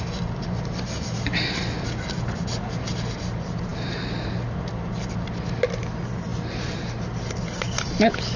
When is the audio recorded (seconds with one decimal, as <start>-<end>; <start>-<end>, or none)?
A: 0.0-8.4